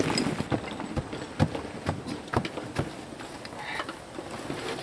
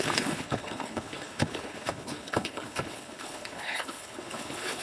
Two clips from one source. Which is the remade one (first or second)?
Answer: second